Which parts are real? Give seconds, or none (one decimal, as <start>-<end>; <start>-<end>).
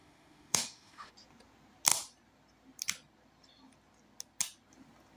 1.1-5.2